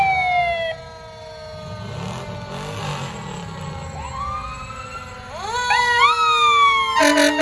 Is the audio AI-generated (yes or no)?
no